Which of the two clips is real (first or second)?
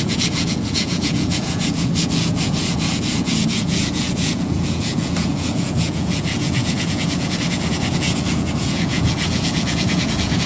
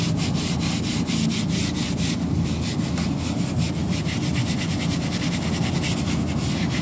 second